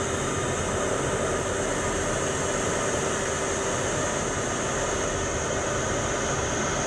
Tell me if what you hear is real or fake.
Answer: real